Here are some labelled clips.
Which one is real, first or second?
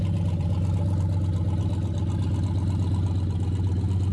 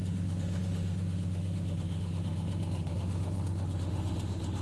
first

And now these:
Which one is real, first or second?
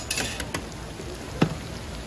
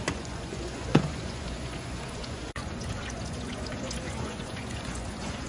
first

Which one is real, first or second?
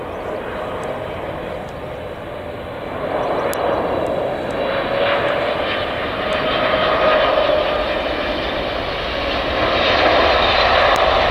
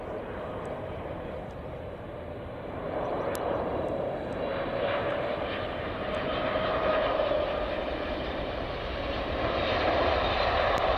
first